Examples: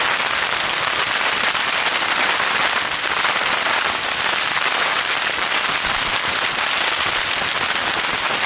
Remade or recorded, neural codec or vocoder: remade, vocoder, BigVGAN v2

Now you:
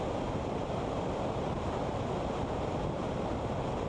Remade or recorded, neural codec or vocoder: recorded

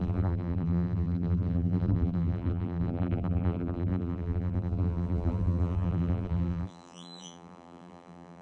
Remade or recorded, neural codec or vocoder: remade, vocoder, BigVGAN v2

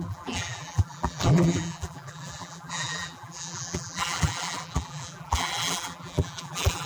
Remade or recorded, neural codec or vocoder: remade, vocoder, BigVGAN v2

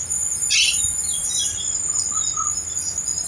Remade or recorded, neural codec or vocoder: recorded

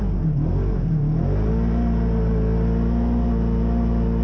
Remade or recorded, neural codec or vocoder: recorded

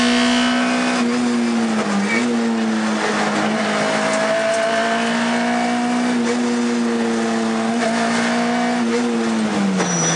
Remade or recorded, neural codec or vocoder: recorded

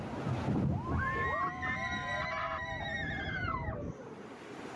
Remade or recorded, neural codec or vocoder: recorded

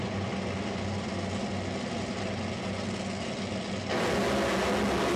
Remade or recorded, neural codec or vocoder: recorded